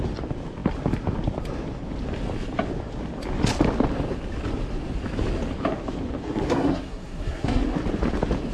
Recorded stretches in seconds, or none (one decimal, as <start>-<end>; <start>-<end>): 0.0-6.2; 7.6-8.5